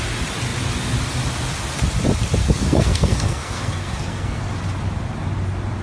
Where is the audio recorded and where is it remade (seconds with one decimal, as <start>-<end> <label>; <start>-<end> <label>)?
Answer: 0.0-2.4 recorded; 2.4-4.4 remade; 4.4-5.8 recorded